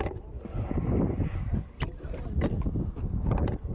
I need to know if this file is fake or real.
fake